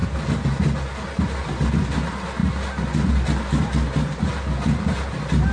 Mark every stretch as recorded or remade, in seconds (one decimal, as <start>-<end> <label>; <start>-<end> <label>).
0.0-5.5 recorded